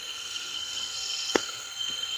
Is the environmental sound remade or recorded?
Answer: remade